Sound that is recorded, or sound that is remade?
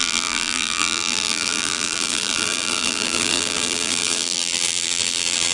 remade